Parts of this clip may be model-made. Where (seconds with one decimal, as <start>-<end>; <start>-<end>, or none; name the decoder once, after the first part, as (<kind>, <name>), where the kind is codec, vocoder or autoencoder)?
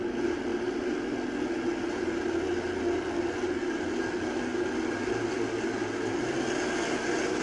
none